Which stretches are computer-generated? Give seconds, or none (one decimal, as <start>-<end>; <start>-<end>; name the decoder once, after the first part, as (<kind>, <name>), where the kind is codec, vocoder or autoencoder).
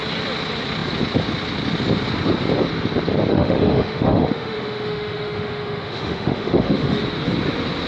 3.3-7.0 (autoencoder, DAC-VAE)